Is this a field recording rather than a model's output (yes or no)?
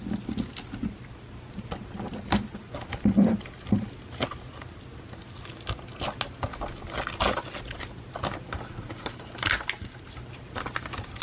yes